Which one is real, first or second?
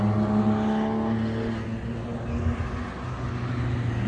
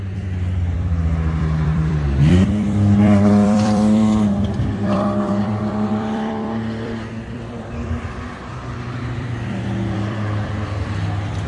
first